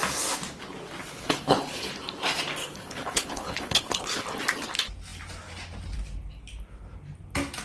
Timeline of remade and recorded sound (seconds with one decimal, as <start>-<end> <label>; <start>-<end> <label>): 0.0-1.0 recorded; 1.0-1.9 remade; 1.9-2.6 recorded; 2.6-4.2 remade; 4.2-7.6 recorded